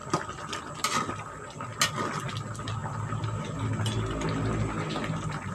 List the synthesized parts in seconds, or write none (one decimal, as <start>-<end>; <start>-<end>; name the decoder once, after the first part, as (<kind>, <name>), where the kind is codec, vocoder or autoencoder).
none